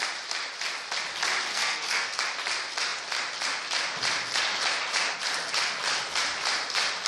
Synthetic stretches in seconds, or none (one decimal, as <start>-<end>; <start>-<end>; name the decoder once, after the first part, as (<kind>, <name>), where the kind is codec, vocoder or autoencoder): 1.5-2.2 (codec, SNAC)